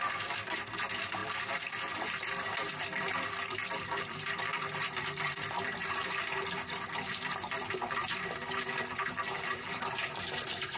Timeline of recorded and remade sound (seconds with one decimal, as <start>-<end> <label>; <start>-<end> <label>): 0.0-10.8 remade